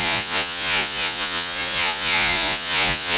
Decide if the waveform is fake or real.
fake